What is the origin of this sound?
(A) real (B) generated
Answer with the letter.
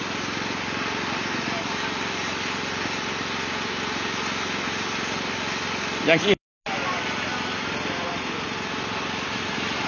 A